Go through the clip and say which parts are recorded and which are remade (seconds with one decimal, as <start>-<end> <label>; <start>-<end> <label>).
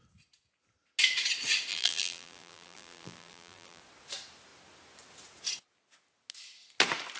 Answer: 0.0-1.7 recorded; 1.7-3.8 remade; 3.8-7.2 recorded